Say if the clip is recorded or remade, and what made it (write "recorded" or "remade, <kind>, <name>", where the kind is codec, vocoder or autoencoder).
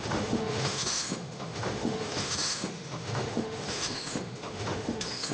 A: remade, autoencoder, DAC-VAE